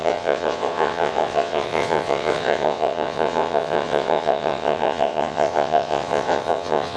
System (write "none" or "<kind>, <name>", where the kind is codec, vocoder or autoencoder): vocoder, WaveNeXt